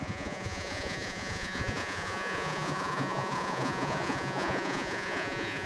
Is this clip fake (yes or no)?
yes